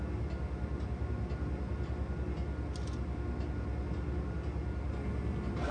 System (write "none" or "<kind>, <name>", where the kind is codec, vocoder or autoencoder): none